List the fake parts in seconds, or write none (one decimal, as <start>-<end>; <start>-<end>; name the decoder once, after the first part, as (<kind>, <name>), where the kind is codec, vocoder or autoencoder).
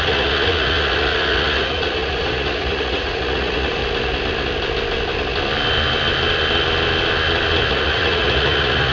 0.0-3.8 (vocoder, Vocos); 7.7-8.9